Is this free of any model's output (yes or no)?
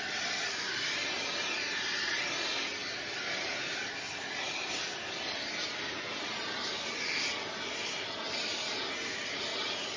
yes